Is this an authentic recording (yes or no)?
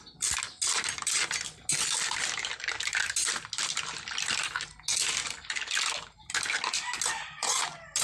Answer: yes